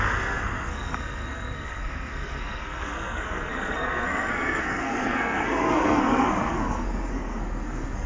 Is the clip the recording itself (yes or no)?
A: no